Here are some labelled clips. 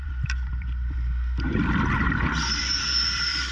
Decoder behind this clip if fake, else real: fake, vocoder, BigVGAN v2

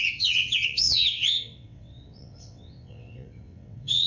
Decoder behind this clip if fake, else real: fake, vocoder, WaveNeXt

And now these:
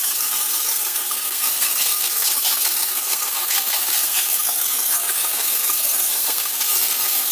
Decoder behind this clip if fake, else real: fake, codec, SNAC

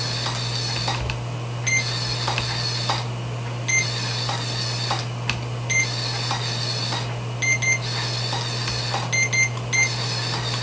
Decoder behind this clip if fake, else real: real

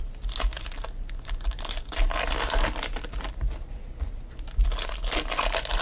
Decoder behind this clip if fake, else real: real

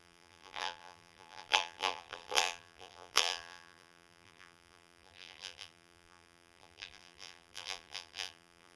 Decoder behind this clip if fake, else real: fake, vocoder, BigVGAN v2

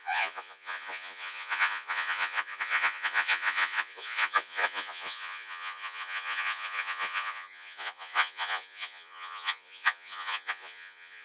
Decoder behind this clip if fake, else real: fake, vocoder, Vocos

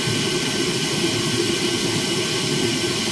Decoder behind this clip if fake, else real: real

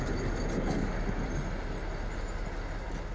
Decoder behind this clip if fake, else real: real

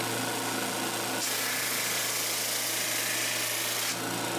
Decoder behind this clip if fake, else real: real